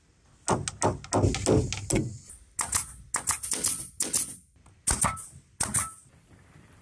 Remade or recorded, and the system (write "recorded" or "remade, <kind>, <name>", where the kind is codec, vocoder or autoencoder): recorded